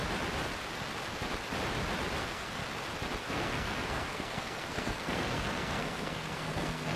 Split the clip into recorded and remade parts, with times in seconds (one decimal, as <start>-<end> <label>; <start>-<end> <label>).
0.0-2.2 recorded; 2.2-2.6 remade; 2.6-3.2 recorded; 3.2-7.0 remade